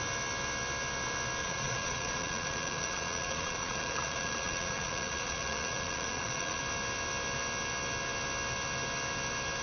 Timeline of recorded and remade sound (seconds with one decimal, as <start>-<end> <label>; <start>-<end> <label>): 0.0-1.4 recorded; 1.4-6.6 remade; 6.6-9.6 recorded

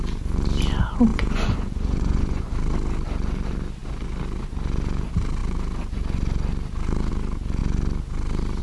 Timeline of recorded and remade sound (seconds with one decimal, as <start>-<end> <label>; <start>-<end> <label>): 0.0-1.1 recorded; 1.1-2.5 remade; 2.5-8.6 recorded

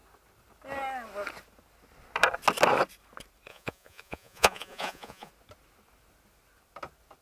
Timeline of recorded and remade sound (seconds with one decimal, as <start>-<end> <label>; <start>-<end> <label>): 0.0-3.5 recorded; 3.5-5.3 remade; 5.3-7.2 recorded

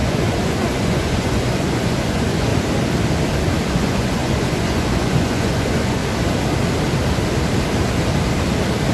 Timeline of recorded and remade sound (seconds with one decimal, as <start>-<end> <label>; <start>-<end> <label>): 0.0-2.5 remade; 2.5-3.7 recorded; 3.7-6.0 remade; 6.0-8.9 recorded

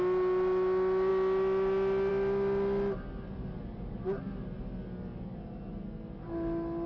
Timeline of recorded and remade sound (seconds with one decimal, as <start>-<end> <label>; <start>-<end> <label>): 0.0-6.9 recorded